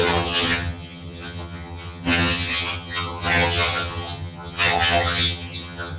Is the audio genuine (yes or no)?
no